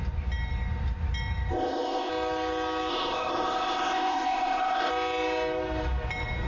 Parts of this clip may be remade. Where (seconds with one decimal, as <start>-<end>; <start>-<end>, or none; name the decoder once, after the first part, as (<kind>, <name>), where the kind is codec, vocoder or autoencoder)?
1.5-2.1 (codec, ZipCodec); 2.9-4.9